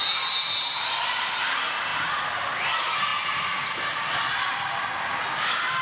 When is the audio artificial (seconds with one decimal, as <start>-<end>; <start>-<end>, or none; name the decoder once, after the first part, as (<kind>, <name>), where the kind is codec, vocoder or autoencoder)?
none